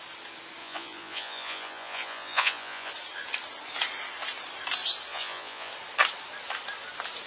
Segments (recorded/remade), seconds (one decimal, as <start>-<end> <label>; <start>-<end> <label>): 0.0-0.6 recorded; 0.6-2.9 remade; 2.9-5.1 recorded; 5.1-5.7 remade; 5.7-7.3 recorded